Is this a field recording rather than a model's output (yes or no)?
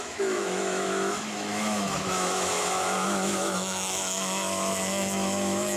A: no